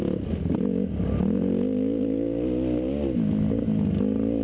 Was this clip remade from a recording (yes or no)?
no